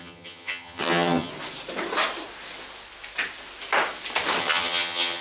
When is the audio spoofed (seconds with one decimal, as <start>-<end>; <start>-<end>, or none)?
0.0-1.3; 4.4-5.2